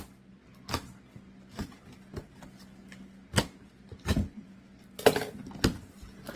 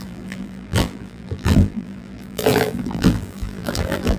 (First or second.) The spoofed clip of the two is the second